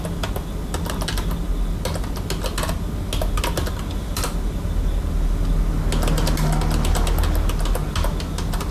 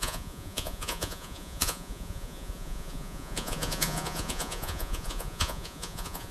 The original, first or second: first